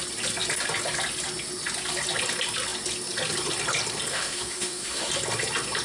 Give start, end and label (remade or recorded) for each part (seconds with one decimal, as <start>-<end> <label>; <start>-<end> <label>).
0.0-4.1 recorded; 4.1-5.1 remade; 5.1-5.8 recorded